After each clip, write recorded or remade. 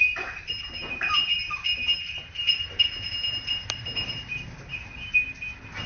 recorded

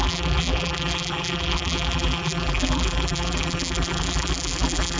remade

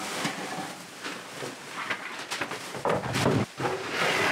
recorded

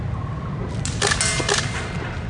recorded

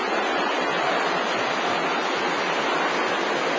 recorded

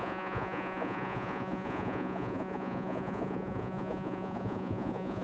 remade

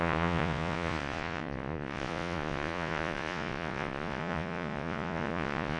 remade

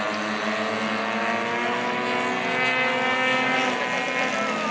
recorded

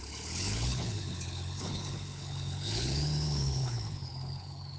remade